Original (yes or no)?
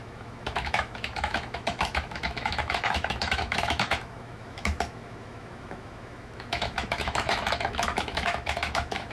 no